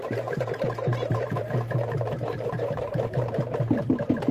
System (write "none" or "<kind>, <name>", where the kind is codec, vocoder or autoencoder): vocoder, BigVGAN v2